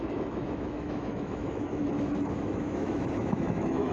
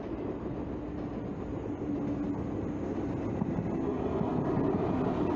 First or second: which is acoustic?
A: second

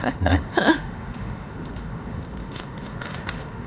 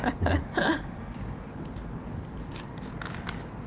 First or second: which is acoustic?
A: second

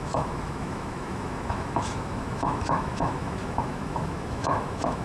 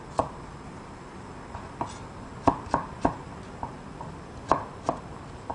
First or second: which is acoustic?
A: second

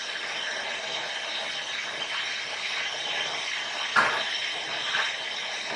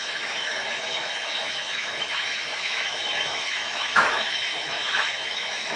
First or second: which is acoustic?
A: first